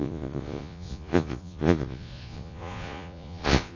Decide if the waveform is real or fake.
fake